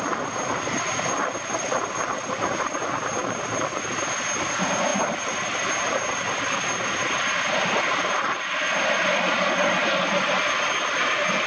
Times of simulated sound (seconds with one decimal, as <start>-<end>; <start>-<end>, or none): none